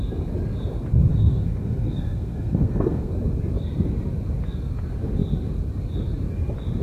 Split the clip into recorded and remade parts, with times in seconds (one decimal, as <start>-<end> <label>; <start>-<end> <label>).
0.0-1.1 recorded; 1.1-3.1 remade; 3.1-6.8 recorded